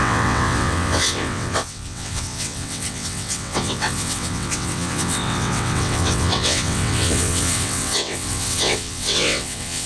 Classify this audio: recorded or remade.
remade